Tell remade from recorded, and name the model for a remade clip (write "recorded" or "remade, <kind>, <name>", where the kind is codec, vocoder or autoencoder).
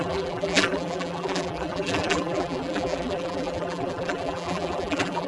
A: remade, vocoder, BigVGAN v2